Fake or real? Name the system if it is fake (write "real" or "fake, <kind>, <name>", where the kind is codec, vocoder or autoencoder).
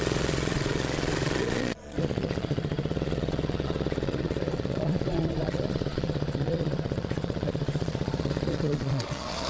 fake, vocoder, Vocos